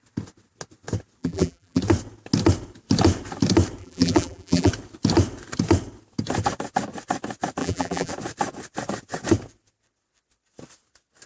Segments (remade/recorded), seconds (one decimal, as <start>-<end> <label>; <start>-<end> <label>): 0.0-1.2 recorded; 1.2-1.8 remade; 1.8-3.8 recorded; 3.8-4.7 remade; 4.7-7.6 recorded; 7.6-8.1 remade; 8.1-11.3 recorded